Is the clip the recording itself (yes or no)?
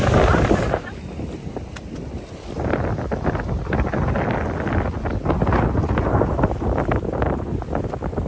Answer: yes